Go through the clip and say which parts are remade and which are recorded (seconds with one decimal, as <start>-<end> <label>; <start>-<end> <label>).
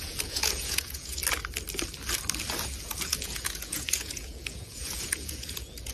0.0-1.2 remade; 1.2-2.8 recorded; 2.8-5.9 remade